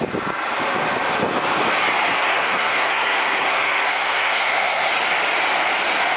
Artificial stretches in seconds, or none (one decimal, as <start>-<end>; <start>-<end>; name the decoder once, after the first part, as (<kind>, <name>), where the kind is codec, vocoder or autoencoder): 2.1-4.9 (codec, SNAC)